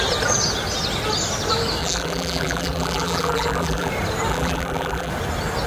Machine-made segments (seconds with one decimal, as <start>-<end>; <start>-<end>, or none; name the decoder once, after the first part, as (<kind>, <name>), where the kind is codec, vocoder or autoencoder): 1.8-3.9 (vocoder, BigVGAN v2); 4.3-5.1